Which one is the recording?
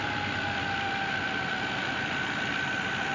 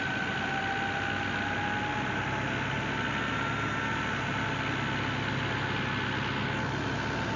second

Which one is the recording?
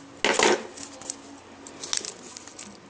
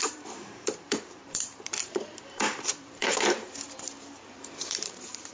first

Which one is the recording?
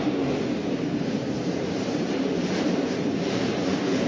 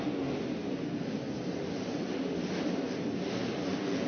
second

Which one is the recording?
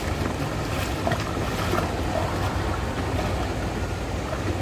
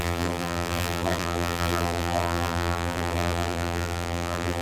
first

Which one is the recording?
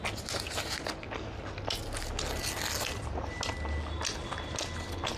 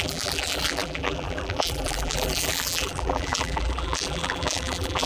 first